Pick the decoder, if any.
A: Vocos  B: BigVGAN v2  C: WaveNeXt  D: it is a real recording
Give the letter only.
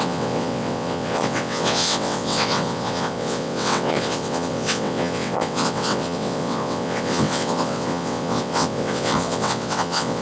C